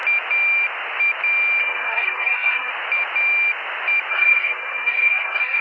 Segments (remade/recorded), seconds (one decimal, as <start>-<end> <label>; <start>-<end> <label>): 0.0-1.6 recorded; 1.6-2.7 remade; 2.7-4.1 recorded; 4.1-5.6 remade